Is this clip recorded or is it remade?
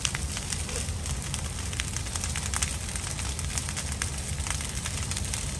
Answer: recorded